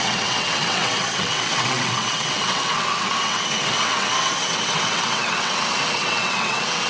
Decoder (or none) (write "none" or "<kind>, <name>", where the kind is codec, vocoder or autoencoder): vocoder, WaveNeXt